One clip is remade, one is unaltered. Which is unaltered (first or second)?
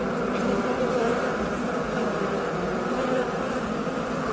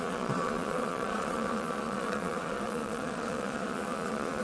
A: first